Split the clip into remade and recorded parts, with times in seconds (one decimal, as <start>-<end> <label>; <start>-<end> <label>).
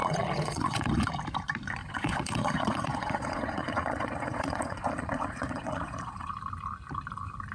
0.0-1.1 remade; 1.1-1.8 recorded; 1.8-6.3 remade; 6.3-7.5 recorded